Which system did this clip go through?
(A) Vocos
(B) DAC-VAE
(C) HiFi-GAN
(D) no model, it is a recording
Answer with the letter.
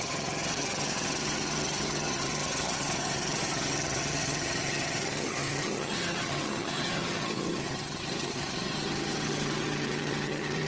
C